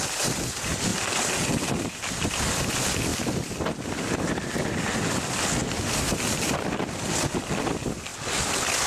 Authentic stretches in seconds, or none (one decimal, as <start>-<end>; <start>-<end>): 0.0-8.9